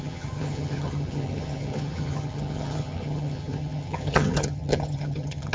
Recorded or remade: remade